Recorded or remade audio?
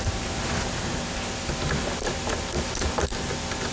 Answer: recorded